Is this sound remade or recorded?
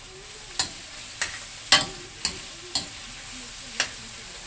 recorded